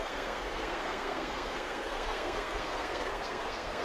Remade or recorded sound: remade